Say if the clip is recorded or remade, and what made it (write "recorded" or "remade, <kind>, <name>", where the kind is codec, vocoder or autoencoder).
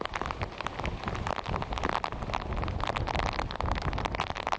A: recorded